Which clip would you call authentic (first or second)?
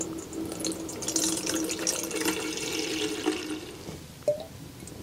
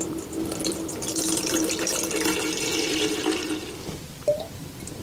first